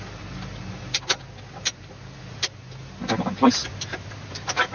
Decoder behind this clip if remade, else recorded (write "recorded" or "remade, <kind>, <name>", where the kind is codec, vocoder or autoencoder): recorded